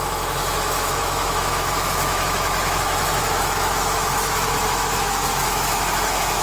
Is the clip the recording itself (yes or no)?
no